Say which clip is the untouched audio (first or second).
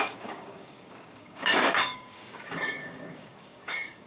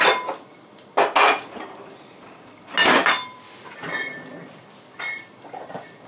second